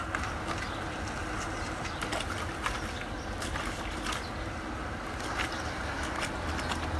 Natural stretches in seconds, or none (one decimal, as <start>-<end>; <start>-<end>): 0.0-1.2; 2.3-4.8; 5.8-7.0